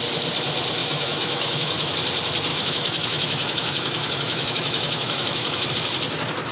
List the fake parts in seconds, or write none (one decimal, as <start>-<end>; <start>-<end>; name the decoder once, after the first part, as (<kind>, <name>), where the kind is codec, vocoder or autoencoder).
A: 0.8-1.9 (autoencoder, DAC-VAE); 2.5-5.7